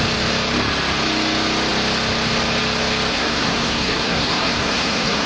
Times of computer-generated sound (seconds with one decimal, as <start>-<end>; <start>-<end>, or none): 3.1-5.3